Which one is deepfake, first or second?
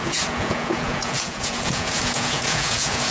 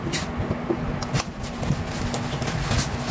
first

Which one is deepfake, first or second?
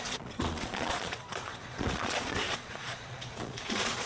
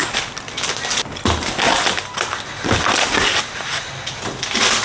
first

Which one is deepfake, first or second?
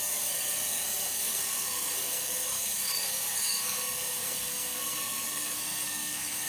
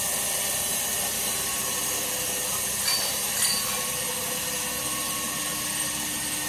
first